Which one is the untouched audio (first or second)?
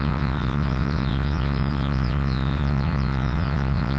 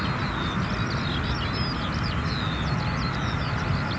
second